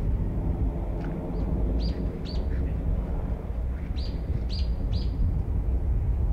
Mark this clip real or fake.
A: real